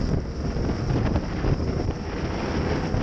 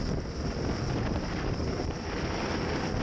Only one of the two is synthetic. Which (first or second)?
second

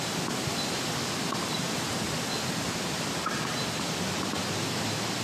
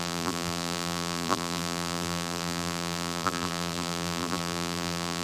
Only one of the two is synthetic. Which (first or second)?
second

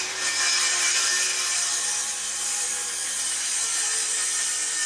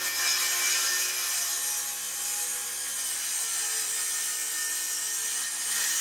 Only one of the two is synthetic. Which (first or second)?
first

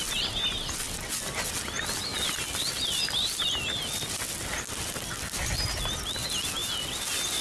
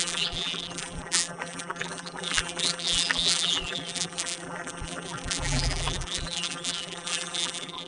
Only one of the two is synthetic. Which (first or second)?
second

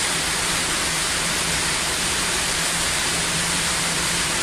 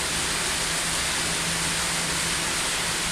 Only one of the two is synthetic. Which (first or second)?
first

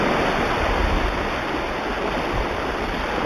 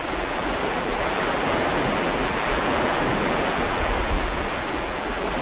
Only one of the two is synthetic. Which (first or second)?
second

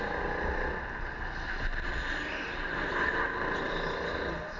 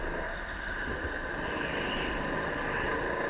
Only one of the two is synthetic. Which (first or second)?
second